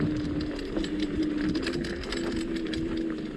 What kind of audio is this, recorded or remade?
recorded